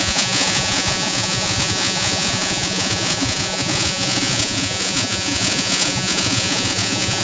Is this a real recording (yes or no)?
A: no